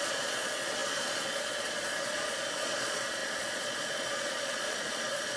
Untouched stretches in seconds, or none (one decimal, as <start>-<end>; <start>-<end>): none